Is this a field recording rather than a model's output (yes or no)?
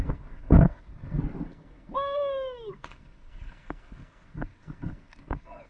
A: no